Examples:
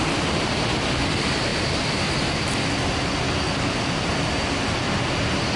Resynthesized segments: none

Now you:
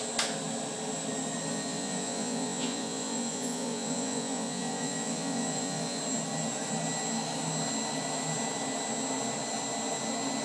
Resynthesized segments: 1.5-6.0 (vocoder, Vocos)

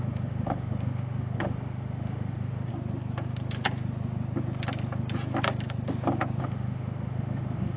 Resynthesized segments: 0.0-2.7 (autoencoder, DAC-VAE); 6.4-7.8

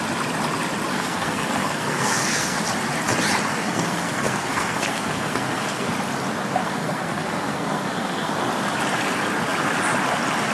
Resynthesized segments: 0.9-2.6 (codec, SNAC); 3.5-5.9; 6.6-8.3

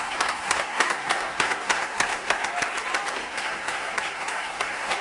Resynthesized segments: 0.0-2.5 (codec, SNAC); 3.1-5.0

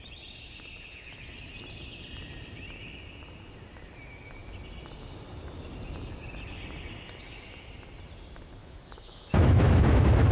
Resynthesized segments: 8.6-10.3 (autoencoder, DAC-VAE)

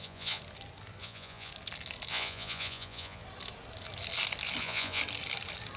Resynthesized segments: 0.0-0.4 (vocoder, Vocos); 1.0-1.5; 2.1-3.2; 4.6-5.0

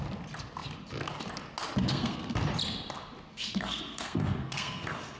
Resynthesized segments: 1.9-2.4 (codec, SNAC); 3.3-5.2